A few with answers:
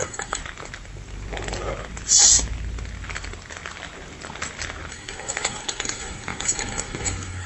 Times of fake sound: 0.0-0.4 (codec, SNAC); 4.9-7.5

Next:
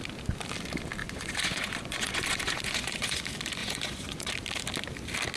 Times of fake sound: 1.0-3.2 (vocoder, Vocos); 3.6-4.3

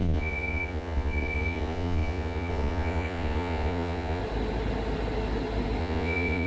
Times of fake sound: 0.0-4.2 (vocoder, Vocos); 5.8-6.5

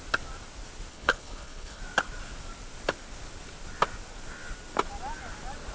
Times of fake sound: 0.9-1.8 (codec, HILCodec)

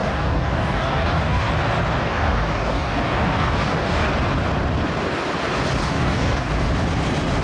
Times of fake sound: 0.0-1.5 (codec, DAC); 2.0-4.1; 5.8-6.5

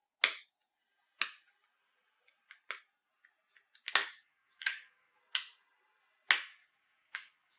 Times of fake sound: 4.0-5.2 (codec, DAC); 6.6-7.6